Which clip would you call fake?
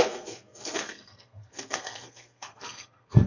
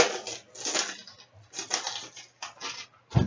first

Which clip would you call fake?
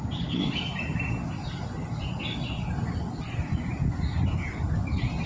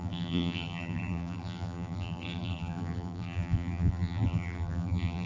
second